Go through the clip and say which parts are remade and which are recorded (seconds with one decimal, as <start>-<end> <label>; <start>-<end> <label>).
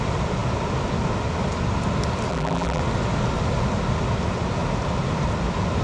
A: 0.0-2.3 recorded; 2.3-2.8 remade; 2.8-5.8 recorded